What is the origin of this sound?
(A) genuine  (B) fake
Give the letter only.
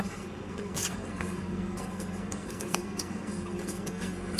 B